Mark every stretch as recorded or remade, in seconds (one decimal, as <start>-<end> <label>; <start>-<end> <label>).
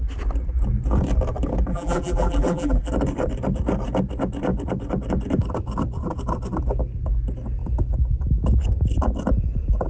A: 0.0-1.7 recorded; 1.7-2.9 remade; 2.9-9.9 recorded